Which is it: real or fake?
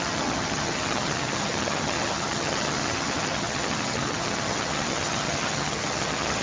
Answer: fake